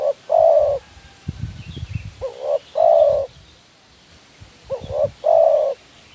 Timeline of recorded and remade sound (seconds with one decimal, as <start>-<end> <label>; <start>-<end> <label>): 0.0-6.1 recorded